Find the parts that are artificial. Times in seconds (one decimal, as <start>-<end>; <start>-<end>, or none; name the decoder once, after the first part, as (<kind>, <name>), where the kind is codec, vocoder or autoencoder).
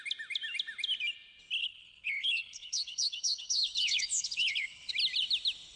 1.6-4.9 (codec, HILCodec)